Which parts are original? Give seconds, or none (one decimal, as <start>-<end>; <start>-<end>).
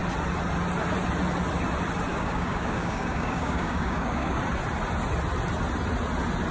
0.0-2.1; 4.4-6.5